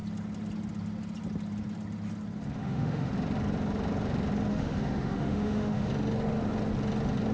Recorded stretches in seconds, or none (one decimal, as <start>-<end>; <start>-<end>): 0.0-2.6; 3.1-4.5; 5.9-7.3